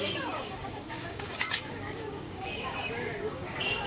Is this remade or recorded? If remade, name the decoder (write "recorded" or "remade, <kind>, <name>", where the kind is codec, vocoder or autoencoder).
remade, codec, DAC